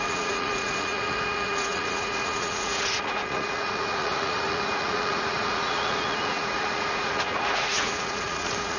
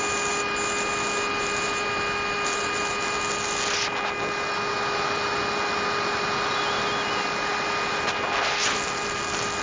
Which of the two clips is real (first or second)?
second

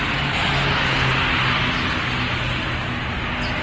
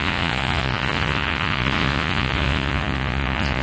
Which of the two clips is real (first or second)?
first